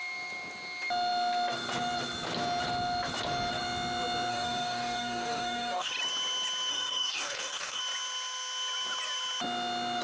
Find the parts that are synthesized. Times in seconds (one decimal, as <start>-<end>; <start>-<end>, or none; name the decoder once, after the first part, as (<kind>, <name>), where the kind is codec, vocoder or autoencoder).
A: 4.3-5.9 (codec, DAC); 6.7-7.8